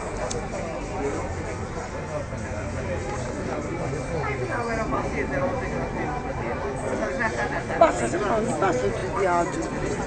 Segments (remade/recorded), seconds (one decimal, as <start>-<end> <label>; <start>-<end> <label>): 0.0-10.1 recorded